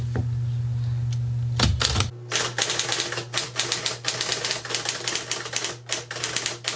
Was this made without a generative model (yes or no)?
yes